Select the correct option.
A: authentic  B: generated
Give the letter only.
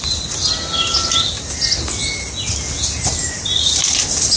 A